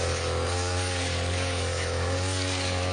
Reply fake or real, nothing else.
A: fake